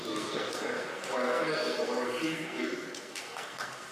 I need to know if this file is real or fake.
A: fake